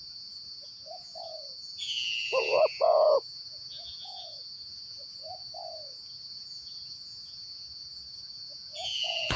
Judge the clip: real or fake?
fake